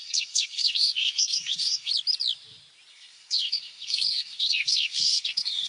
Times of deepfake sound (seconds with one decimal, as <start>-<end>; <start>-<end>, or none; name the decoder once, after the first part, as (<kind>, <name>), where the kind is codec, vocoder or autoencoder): 0.0-1.9 (codec, SNAC); 2.9-5.7